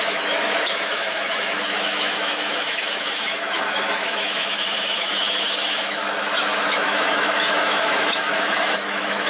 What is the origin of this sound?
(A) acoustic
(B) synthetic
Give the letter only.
B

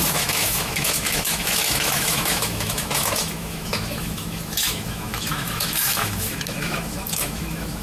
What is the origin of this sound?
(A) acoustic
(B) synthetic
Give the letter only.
B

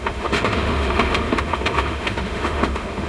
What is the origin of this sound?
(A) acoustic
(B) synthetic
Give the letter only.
B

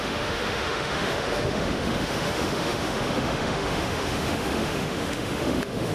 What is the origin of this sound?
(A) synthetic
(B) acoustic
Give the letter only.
A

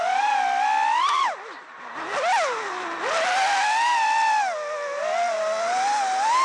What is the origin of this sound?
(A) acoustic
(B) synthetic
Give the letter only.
A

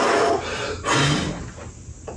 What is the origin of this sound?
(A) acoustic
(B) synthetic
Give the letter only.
A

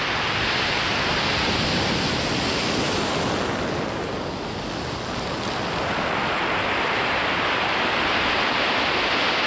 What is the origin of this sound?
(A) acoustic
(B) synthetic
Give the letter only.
A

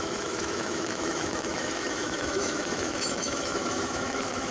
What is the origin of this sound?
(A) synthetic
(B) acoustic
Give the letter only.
A